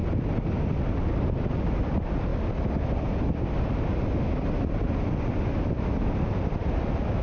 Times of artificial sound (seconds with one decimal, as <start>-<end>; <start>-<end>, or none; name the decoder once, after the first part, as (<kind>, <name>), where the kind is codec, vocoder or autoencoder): none